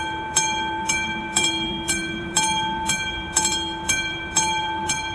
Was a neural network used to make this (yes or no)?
yes